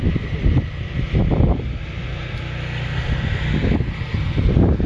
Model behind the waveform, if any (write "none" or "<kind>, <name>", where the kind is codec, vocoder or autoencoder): none